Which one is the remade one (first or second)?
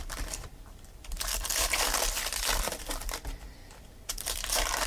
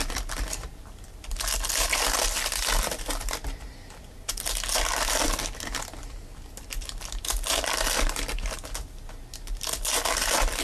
first